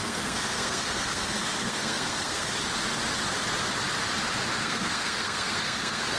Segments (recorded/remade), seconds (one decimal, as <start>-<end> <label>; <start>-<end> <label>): 0.0-2.5 remade; 2.5-4.6 recorded; 4.6-6.2 remade